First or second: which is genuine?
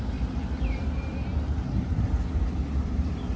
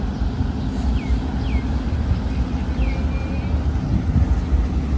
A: second